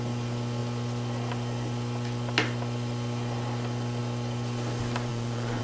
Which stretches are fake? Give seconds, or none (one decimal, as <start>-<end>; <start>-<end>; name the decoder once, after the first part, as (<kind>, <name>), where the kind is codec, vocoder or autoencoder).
5.1-5.6 (vocoder, Vocos)

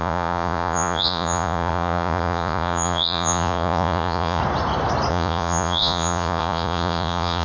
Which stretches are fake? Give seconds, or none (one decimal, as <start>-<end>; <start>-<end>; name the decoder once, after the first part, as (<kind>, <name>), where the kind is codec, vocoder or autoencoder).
0.0-4.4 (vocoder, Vocos); 5.1-7.4

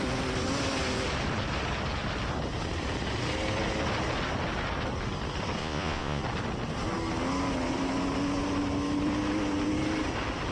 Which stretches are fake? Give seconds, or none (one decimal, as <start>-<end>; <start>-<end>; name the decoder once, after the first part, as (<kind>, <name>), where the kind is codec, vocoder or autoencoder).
5.6-6.2 (vocoder, Vocos)

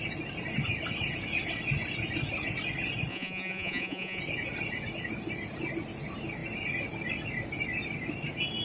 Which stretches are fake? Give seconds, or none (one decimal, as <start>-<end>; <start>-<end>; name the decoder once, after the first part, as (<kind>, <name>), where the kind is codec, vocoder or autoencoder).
3.1-4.2 (vocoder, Vocos)

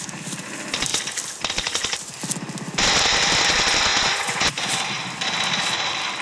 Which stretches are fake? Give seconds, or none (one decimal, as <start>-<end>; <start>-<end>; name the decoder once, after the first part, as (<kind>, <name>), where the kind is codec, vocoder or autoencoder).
3.9-4.7 (vocoder, Vocos)

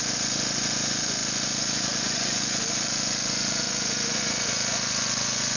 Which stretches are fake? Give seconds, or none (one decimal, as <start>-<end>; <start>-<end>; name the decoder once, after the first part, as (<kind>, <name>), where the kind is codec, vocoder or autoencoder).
0.0-5.6 (vocoder, Vocos)

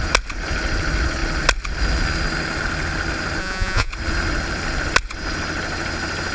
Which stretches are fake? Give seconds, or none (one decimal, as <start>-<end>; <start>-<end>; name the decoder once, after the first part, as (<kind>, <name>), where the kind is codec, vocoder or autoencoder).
3.4-3.9 (vocoder, Vocos)